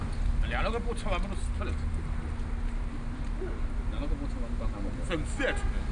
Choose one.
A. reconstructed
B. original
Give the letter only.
B